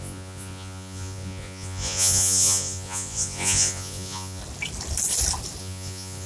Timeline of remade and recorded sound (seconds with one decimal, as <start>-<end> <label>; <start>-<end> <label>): 0.0-4.4 remade; 4.4-5.6 recorded; 5.6-6.3 remade